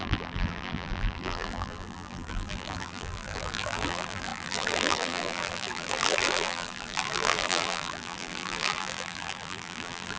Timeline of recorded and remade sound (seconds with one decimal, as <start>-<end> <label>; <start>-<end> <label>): 0.0-10.2 remade